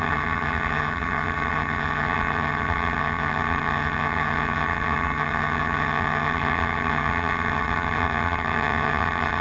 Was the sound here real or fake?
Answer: fake